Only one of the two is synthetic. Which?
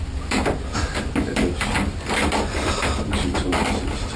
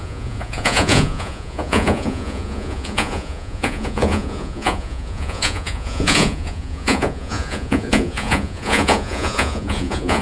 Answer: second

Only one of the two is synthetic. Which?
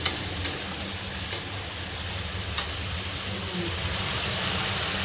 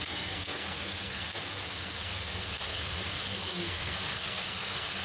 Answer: second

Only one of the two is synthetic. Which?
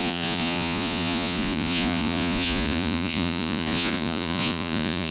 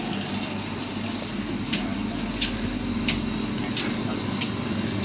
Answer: first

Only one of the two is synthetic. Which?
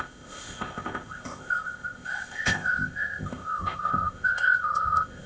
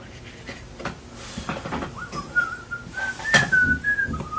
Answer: first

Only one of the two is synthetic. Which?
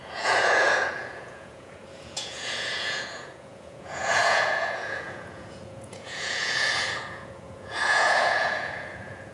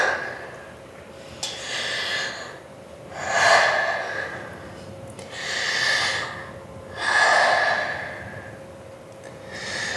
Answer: first